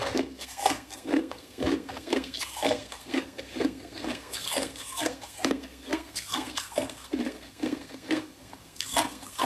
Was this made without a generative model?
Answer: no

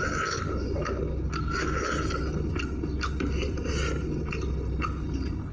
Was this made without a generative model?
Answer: yes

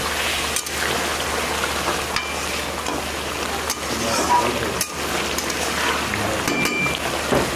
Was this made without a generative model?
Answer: yes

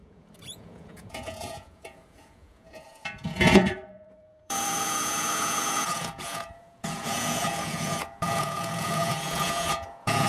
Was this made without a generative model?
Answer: no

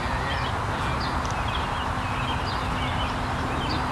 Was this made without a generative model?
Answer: yes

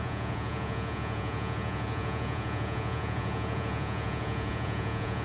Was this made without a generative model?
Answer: no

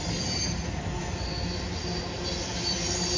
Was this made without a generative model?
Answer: yes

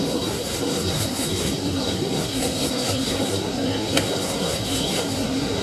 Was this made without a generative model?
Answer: no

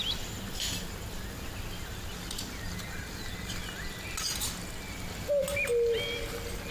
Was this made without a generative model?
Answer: yes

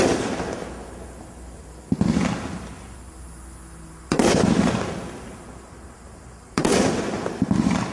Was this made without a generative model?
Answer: yes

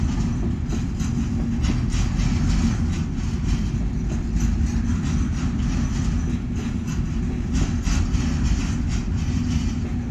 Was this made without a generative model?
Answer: yes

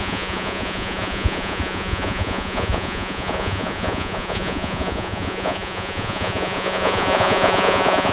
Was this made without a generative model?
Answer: no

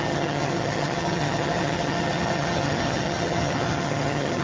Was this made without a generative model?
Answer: no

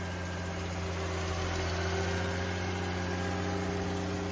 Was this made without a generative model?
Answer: yes